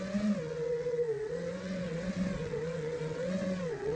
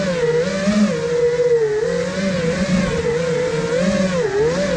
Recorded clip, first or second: second